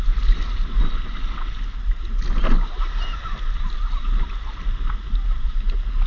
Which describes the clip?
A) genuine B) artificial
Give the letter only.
A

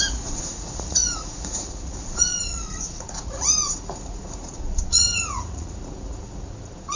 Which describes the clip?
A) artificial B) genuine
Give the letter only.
A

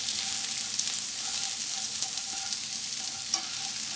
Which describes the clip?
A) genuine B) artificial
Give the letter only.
A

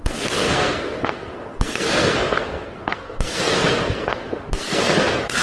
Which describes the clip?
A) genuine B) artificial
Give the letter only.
B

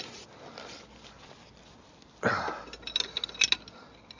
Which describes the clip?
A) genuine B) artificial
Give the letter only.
A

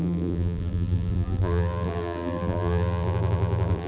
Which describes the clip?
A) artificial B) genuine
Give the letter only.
A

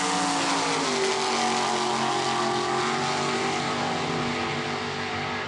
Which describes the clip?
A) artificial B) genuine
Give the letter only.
B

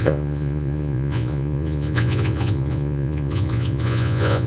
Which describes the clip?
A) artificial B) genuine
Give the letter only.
A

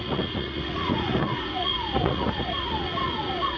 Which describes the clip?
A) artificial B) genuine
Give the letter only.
A